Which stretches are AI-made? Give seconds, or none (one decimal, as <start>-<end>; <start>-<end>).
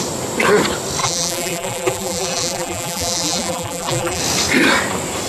1.0-4.2